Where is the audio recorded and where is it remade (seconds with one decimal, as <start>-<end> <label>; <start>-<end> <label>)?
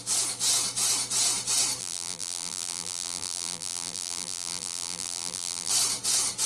0.0-1.8 recorded; 1.8-5.7 remade; 5.7-6.5 recorded